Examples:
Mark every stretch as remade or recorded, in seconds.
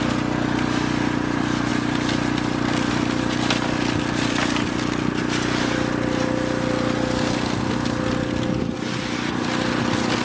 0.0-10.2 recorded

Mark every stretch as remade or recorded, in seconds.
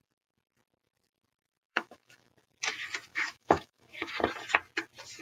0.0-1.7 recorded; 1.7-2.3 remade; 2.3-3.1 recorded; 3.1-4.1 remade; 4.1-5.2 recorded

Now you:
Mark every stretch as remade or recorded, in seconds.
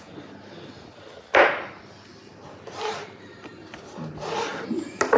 0.0-2.1 recorded; 2.1-3.6 remade; 3.6-5.2 recorded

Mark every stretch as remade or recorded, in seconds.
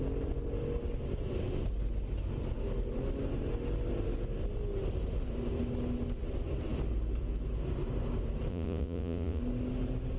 0.0-8.5 recorded; 8.5-9.4 remade; 9.4-10.2 recorded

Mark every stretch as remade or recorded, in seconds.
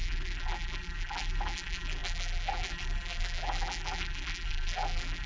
0.0-5.3 remade